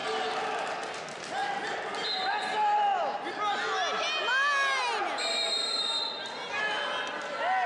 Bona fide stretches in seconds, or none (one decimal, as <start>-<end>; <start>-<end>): 0.0-7.7